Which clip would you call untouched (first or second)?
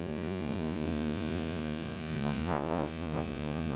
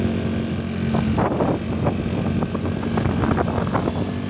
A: second